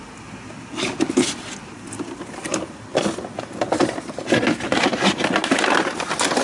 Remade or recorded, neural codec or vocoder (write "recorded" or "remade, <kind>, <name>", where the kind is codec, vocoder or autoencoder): recorded